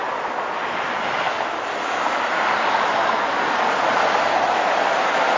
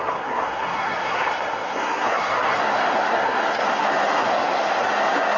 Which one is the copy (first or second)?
second